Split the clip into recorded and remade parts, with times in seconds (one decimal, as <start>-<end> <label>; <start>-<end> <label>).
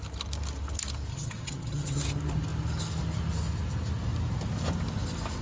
0.0-1.1 recorded; 1.1-2.0 remade; 2.0-5.4 recorded